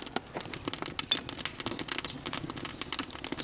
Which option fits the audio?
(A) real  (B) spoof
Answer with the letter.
A